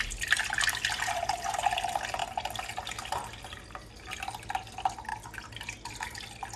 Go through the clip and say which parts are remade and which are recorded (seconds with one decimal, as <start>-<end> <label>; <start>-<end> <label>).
0.0-6.6 recorded